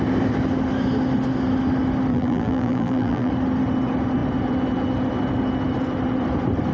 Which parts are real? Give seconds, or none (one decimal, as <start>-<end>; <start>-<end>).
0.0-2.1; 3.3-6.7

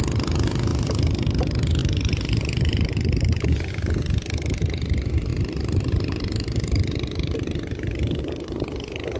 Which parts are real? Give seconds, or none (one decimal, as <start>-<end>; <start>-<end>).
0.0-1.8; 3.7-5.3; 8.2-9.2

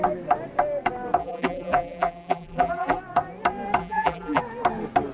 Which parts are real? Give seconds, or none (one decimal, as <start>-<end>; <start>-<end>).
0.0-1.2; 3.0-3.8; 4.4-5.1

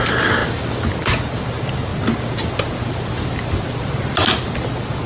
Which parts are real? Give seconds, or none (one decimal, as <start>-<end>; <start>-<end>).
0.4-1.4; 1.9-5.1

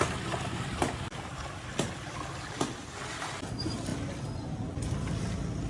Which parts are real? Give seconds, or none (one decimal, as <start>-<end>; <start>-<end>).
0.0-0.8; 1.6-5.7

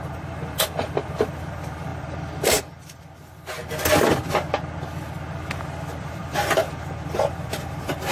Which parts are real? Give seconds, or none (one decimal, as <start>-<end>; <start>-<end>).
3.6-6.0

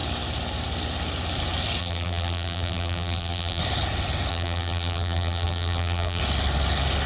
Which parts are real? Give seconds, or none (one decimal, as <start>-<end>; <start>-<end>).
0.0-1.8; 3.6-4.3; 6.2-7.1

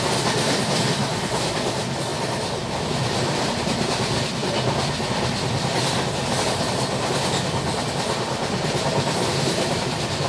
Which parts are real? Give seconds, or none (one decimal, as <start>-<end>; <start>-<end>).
2.1-3.0; 4.4-7.2